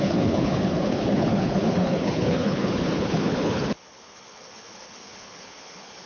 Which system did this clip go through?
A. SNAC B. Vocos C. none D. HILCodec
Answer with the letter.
D